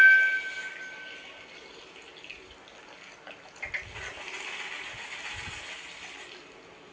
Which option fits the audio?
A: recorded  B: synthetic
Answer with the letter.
A